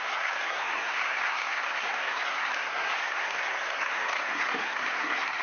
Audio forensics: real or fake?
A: fake